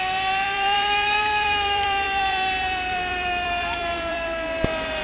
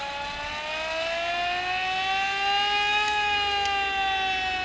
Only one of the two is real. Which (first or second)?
second